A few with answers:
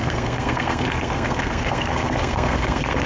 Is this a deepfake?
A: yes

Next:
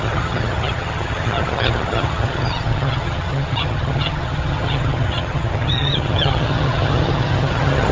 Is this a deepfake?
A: yes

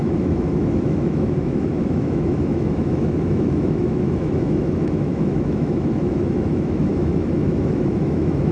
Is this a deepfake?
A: yes